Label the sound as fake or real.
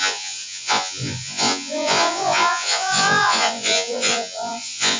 fake